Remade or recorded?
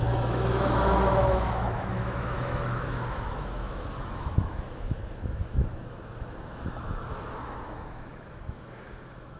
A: remade